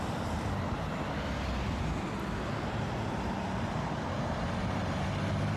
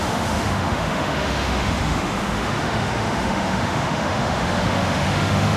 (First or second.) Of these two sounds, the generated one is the second